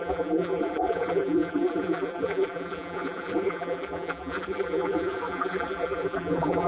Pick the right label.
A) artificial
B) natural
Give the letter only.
A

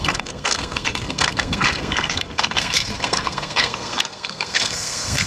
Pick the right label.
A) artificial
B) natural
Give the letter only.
A